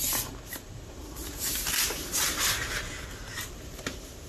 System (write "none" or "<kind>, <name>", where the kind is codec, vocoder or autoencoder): vocoder, BigVGAN v2